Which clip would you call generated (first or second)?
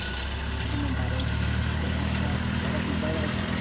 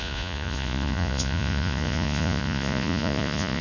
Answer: second